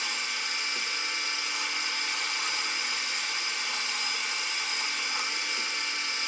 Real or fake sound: real